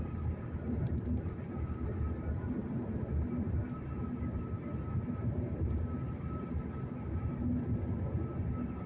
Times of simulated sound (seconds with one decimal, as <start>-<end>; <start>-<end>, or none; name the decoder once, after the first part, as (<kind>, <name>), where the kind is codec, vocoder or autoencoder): none